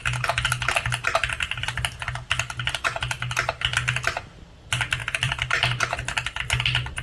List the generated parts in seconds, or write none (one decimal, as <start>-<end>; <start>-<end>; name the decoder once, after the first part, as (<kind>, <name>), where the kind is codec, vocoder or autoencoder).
5.0-5.8 (vocoder, BigVGAN v2)